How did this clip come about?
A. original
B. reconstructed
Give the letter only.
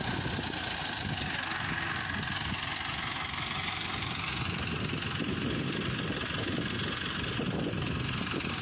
A